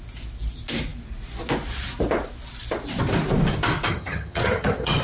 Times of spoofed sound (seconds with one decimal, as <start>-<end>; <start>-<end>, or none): 3.9-5.0